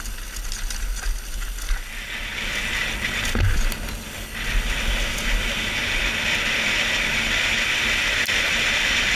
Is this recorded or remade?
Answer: recorded